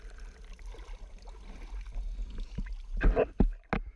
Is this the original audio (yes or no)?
yes